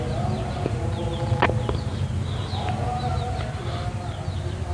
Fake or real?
real